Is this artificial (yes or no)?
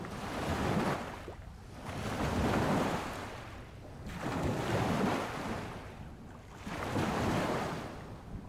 no